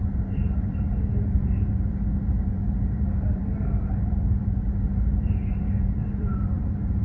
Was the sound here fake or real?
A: fake